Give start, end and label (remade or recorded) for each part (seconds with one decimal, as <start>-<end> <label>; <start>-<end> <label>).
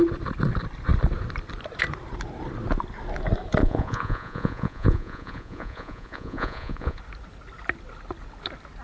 0.0-3.6 recorded; 3.6-7.0 remade; 7.0-8.8 recorded